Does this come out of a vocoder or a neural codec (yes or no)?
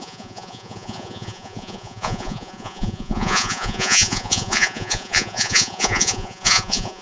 yes